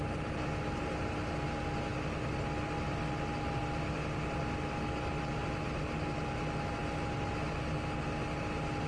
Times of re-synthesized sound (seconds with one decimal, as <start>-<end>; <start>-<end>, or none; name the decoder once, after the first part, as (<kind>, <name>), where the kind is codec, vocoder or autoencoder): none